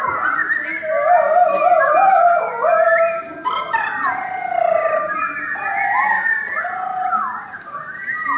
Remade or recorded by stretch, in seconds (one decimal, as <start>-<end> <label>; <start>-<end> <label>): 0.0-8.4 recorded